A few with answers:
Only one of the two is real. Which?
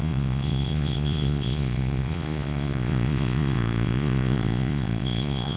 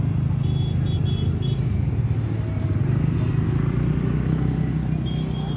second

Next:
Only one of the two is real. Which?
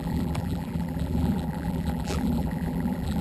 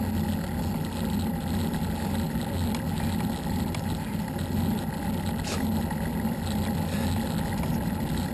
second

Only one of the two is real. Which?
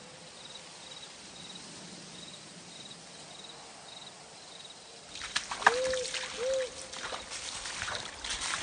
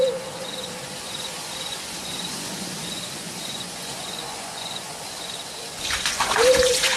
first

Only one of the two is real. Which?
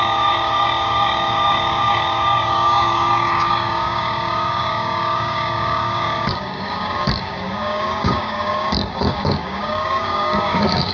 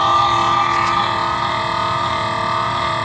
second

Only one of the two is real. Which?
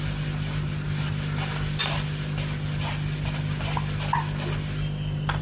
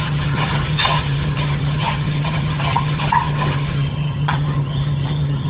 first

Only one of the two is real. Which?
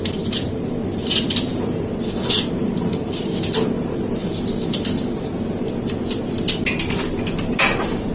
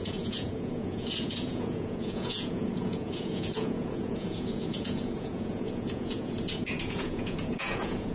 first